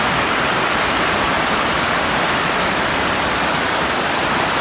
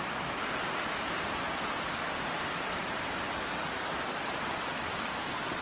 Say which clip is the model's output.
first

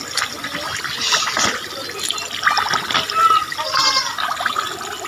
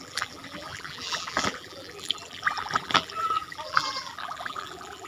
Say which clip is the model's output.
second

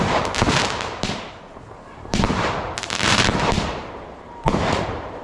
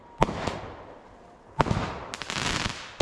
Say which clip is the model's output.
first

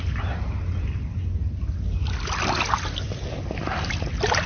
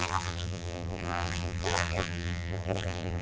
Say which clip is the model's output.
second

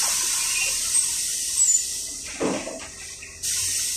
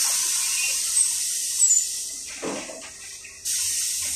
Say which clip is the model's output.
first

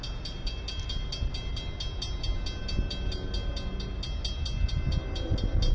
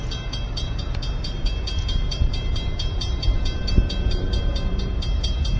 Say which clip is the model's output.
second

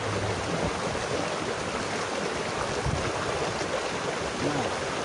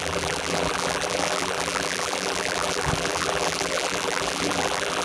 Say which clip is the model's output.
second